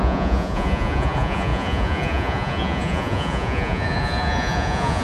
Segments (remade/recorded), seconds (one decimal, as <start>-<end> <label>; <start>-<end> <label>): 0.0-5.0 remade